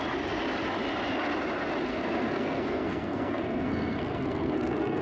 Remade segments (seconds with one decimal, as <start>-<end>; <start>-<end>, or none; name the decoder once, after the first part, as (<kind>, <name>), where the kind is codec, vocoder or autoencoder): 1.9-5.0 (codec, SNAC)